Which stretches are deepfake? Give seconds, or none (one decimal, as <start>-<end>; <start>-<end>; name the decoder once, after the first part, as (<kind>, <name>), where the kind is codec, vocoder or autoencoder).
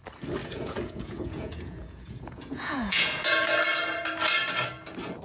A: 0.4-3.5 (vocoder, Vocos)